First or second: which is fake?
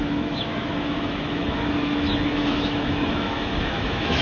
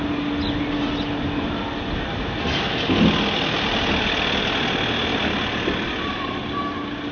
first